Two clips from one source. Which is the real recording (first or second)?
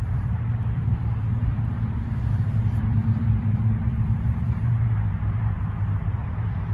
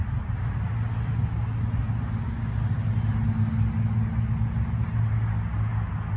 second